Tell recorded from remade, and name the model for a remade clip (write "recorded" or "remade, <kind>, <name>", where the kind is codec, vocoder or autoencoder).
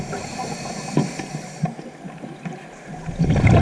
recorded